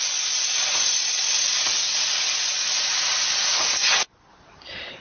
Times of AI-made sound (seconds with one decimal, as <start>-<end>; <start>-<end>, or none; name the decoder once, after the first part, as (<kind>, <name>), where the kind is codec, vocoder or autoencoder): none